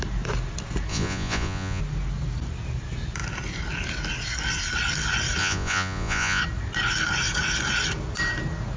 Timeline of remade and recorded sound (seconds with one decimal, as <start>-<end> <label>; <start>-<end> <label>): 0.0-0.9 recorded; 0.9-1.8 remade; 1.8-5.4 recorded; 5.4-6.4 remade; 6.4-8.8 recorded